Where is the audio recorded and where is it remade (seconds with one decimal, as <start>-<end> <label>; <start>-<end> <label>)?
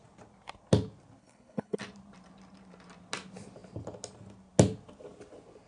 0.0-1.2 recorded; 1.2-1.8 remade; 1.8-5.7 recorded